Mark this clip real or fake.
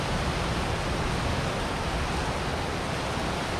real